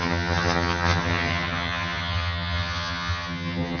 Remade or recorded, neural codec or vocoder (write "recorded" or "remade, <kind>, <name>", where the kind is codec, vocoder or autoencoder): remade, vocoder, HiFi-GAN